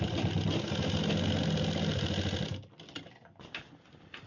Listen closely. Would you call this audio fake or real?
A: real